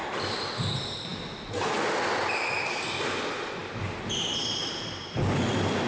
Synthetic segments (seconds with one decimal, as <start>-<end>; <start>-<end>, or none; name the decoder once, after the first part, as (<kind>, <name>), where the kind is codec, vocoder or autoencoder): none